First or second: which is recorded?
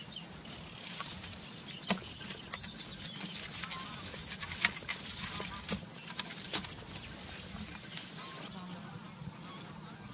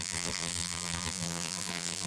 first